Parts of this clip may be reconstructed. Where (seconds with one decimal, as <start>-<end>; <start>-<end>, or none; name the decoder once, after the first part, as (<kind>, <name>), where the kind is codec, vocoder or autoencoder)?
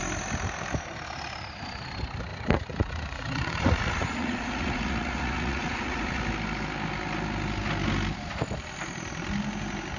2.3-6.2 (vocoder, Vocos)